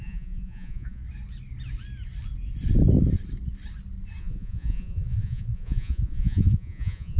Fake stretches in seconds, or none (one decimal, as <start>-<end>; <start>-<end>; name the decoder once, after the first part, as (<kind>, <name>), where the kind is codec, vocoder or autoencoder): 0.0-1.0 (vocoder, Vocos); 4.2-7.2